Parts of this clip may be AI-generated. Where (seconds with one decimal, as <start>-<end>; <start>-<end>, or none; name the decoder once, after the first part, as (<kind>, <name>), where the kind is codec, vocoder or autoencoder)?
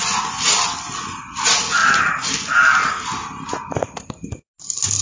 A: none